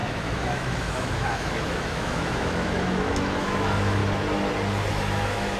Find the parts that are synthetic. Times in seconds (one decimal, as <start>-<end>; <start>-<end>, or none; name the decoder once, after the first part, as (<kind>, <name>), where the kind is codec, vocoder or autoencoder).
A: 0.0-4.0 (autoencoder, DAC-VAE); 4.9-5.6